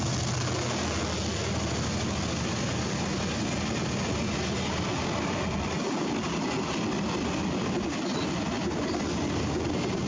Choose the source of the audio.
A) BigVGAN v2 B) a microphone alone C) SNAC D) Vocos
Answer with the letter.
B